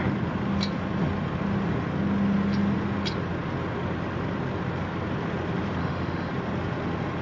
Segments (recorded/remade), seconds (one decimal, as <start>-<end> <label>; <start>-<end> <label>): 0.0-5.8 recorded; 5.8-6.3 remade; 6.3-7.2 recorded